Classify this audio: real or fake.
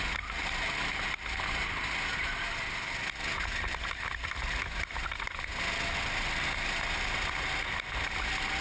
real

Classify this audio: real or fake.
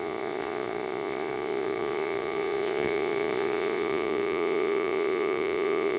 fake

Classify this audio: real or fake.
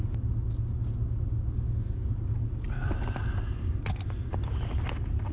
real